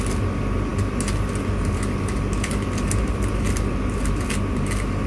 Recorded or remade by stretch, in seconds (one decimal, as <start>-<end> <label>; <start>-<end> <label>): 0.0-5.1 recorded